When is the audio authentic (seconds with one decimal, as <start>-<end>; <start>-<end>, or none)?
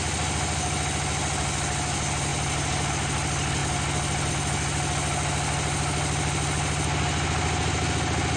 0.0-8.4